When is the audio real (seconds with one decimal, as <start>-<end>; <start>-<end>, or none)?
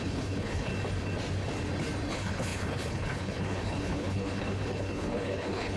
0.7-2.1